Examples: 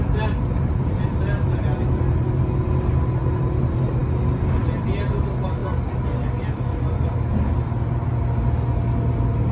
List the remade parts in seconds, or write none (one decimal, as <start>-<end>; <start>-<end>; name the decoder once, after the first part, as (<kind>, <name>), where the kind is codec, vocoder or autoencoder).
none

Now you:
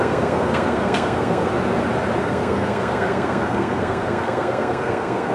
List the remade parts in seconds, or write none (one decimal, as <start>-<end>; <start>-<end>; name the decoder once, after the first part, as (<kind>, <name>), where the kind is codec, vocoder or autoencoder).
0.0-1.5 (codec, SNAC); 2.2-5.3

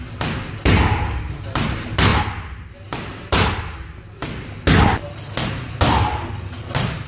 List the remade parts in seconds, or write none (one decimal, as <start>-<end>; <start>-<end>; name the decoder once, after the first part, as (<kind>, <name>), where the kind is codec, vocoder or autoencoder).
none

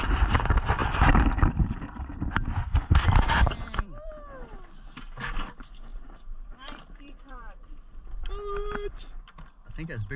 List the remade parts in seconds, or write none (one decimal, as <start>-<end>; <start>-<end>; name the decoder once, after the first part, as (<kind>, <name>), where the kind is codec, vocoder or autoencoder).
0.8-1.7 (vocoder, BigVGAN v2); 2.1-4.1; 5.9-8.3